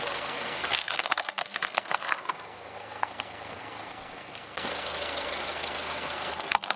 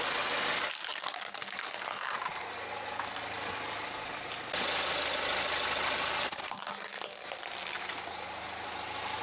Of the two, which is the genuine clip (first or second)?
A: second